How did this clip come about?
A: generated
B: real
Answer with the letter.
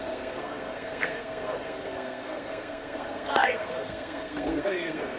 A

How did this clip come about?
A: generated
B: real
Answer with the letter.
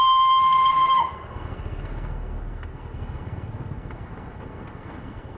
A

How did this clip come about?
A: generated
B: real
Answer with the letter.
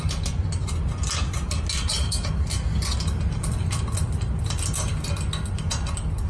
B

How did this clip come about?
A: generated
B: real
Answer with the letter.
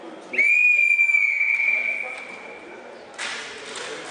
B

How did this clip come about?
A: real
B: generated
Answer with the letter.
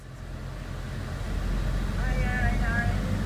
A